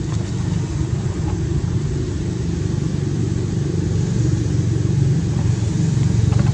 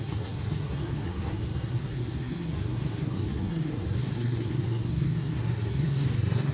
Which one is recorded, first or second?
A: first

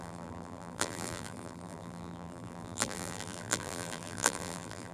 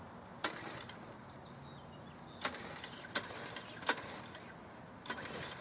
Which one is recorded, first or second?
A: second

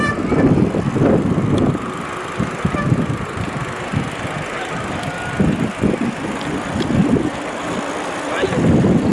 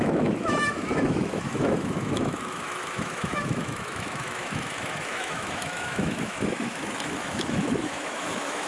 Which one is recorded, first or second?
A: first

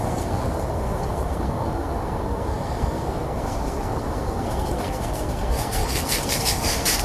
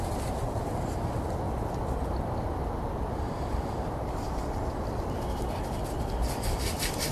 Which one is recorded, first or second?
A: second